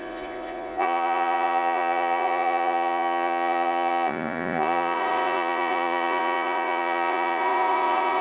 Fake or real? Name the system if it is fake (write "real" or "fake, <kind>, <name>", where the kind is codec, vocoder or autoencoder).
fake, vocoder, Vocos